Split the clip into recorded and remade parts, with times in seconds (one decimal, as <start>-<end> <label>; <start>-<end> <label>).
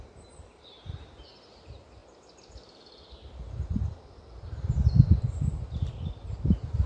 0.0-6.9 recorded